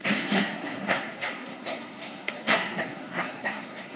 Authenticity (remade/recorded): remade